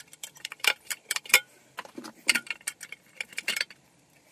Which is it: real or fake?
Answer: fake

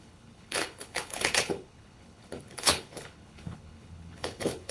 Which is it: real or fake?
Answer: fake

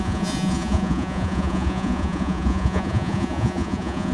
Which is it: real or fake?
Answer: fake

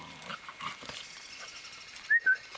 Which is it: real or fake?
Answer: real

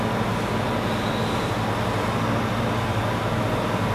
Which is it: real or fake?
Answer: real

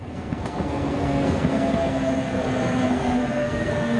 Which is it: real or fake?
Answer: fake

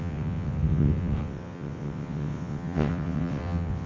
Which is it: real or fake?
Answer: fake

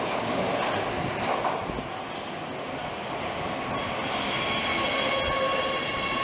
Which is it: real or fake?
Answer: real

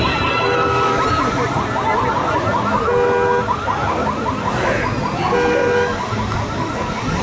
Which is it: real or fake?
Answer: real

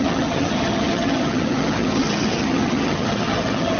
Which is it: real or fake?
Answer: fake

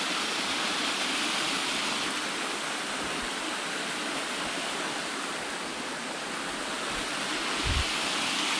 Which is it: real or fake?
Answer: real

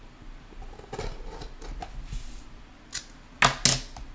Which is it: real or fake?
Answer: real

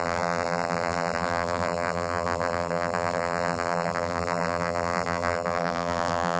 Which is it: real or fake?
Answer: fake